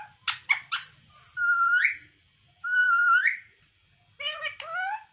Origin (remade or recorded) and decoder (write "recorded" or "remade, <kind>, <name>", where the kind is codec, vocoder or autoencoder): recorded